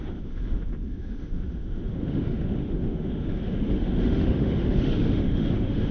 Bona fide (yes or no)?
no